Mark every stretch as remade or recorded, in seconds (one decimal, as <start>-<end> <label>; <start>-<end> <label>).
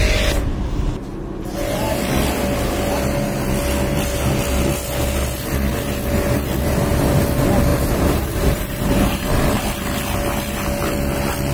0.0-7.7 recorded; 7.7-9.6 remade; 9.6-11.5 recorded